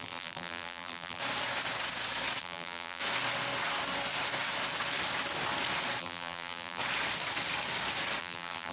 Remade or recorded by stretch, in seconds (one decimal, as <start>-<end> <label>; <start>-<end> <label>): 0.0-1.2 remade; 1.2-2.4 recorded; 2.4-3.0 remade; 3.0-6.0 recorded; 6.0-6.8 remade; 6.8-8.2 recorded; 8.2-8.7 remade